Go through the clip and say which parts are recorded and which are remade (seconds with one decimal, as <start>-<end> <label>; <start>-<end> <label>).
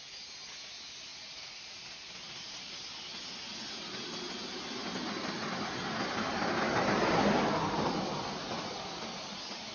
0.0-1.1 recorded; 1.1-2.1 remade; 2.1-9.7 recorded